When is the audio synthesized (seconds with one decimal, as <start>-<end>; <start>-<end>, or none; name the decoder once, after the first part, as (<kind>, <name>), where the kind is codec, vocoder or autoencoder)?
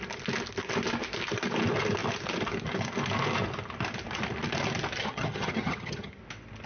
5.0-6.2 (vocoder, HiFi-GAN)